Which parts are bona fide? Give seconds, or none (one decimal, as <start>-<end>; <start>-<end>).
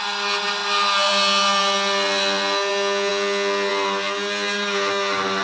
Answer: 0.0-5.4